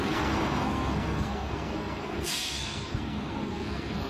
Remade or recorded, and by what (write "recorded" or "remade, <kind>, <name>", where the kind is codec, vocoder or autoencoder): remade, codec, SNAC